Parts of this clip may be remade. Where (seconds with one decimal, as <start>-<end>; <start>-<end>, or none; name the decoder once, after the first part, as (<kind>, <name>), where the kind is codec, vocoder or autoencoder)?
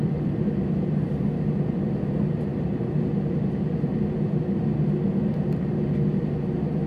none